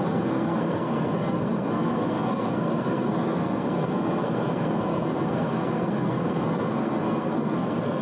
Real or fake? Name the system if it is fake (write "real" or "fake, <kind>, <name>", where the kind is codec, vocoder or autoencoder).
fake, codec, SNAC